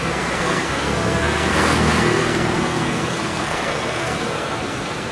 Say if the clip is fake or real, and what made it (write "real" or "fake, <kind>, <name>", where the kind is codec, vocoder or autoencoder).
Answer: fake, codec, SNAC